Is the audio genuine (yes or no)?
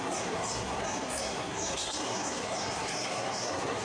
no